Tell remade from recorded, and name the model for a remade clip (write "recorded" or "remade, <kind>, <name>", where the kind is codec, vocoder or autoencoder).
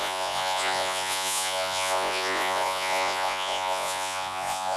remade, vocoder, Vocos